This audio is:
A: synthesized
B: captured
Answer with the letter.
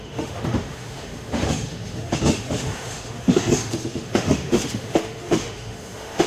A